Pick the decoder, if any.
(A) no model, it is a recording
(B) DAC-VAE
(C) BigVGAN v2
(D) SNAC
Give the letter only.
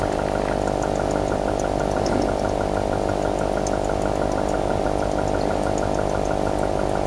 A